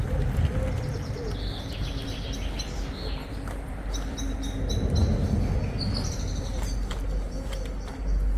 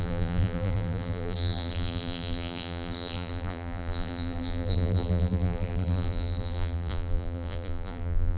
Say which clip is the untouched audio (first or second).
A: first